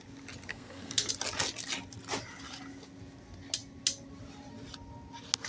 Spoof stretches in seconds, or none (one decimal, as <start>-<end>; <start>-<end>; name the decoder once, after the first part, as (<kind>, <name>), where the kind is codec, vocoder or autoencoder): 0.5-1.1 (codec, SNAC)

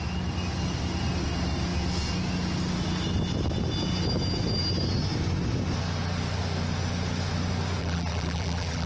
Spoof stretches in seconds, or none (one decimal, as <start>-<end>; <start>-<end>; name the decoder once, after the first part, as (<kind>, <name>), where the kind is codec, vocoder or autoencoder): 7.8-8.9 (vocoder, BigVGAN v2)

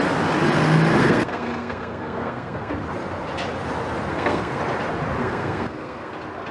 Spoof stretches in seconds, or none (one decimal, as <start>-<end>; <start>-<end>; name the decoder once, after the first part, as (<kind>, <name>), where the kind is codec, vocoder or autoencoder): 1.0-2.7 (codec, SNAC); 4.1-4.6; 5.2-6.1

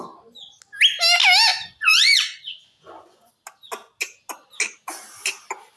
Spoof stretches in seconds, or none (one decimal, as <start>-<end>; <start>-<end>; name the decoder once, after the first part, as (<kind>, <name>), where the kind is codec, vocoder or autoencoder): 1.5-3.3 (vocoder, Vocos)

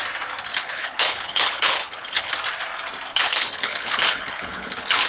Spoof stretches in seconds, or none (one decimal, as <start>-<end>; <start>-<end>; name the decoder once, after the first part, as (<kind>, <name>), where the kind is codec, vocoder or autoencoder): 0.5-2.3 (codec, HILCodec); 3.1-5.1

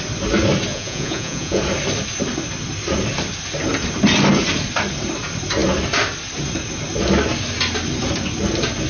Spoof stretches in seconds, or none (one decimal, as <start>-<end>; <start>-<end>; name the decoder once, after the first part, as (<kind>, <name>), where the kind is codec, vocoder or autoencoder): 0.7-1.6 (vocoder, Vocos)